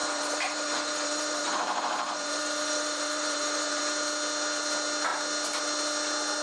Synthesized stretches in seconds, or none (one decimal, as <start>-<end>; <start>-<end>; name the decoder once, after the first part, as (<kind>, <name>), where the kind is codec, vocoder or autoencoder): 0.0-3.8 (vocoder, BigVGAN v2)